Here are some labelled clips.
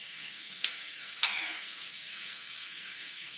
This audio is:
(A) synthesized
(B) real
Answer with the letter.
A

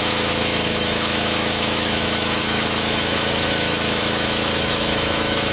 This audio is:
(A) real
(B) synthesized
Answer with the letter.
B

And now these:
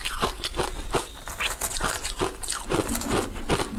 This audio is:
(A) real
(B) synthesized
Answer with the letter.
A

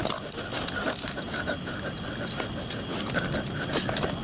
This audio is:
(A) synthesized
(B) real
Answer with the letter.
B